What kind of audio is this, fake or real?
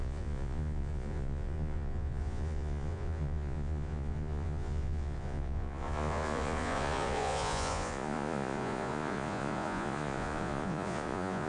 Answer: fake